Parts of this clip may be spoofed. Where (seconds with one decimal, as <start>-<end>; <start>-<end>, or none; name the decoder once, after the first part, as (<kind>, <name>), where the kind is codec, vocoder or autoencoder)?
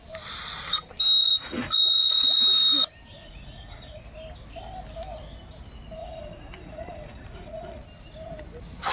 1.2-2.4 (vocoder, Vocos); 3.1-4.0; 6.0-7.8